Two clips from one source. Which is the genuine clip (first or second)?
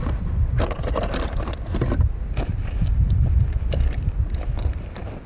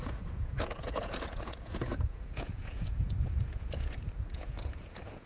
first